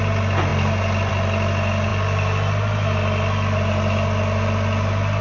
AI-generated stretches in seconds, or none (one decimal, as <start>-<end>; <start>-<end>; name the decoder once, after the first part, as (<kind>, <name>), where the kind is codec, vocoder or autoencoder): none